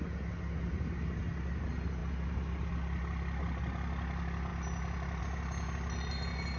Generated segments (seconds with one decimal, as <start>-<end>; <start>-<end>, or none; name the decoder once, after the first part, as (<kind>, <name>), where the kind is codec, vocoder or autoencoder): none